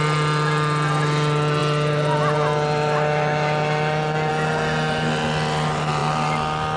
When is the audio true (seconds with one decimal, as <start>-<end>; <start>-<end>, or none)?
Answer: 0.0-6.8